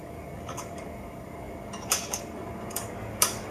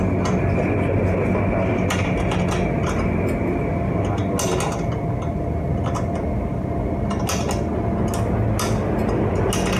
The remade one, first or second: first